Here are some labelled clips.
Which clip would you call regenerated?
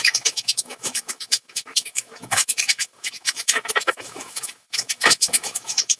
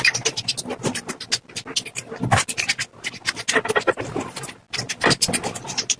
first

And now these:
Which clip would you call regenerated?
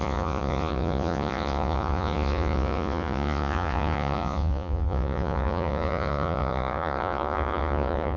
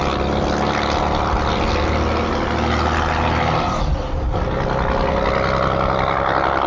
first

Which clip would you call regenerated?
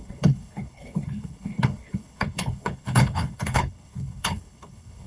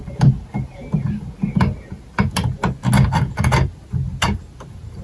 first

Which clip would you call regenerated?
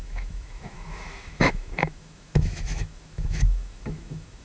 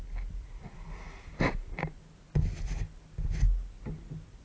first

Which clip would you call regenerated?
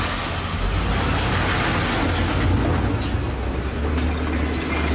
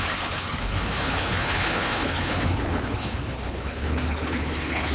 second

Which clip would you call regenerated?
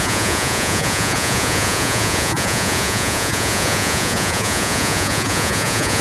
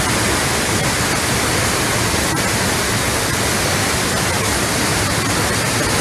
first